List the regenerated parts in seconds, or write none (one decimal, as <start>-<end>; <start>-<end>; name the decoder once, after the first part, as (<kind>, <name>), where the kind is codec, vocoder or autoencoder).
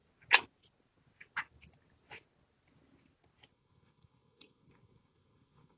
3.5-5.8 (codec, SNAC)